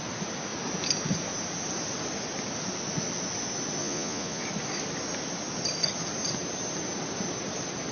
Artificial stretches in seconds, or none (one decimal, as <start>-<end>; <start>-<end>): 3.8-4.4